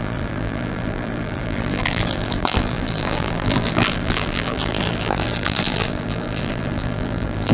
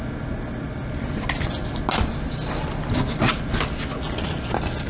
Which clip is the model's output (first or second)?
first